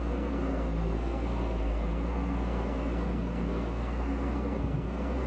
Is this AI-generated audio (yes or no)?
yes